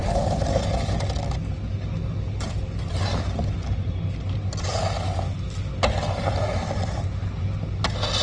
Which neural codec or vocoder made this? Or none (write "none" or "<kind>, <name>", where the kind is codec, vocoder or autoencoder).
none